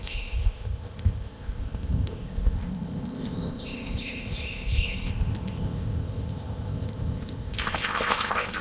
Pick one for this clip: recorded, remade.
remade